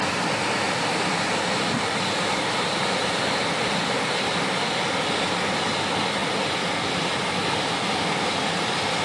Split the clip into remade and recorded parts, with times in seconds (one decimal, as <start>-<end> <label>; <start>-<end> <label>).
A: 0.0-9.0 recorded